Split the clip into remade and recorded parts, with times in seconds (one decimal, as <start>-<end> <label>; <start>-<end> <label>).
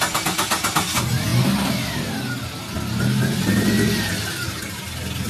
0.0-5.3 recorded